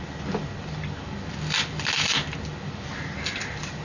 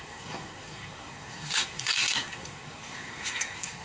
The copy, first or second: second